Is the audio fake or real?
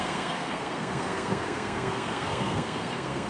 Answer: fake